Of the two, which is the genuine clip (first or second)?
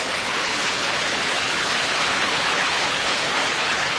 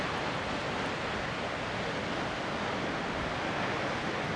second